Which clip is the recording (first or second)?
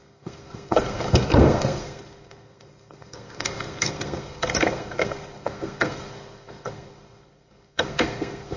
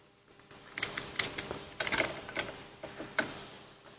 second